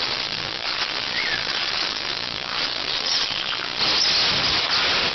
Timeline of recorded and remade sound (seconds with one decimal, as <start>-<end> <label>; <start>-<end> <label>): 0.0-3.8 remade; 3.8-5.1 recorded